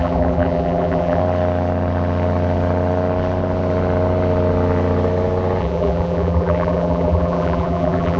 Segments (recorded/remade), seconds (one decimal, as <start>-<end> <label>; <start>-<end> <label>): 0.0-1.2 remade; 1.2-5.6 recorded; 5.6-8.2 remade